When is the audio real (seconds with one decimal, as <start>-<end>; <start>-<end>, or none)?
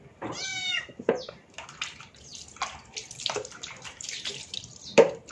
2.3-3.1